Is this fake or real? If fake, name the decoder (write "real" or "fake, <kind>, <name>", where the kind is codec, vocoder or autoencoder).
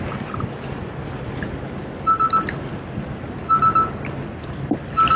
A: real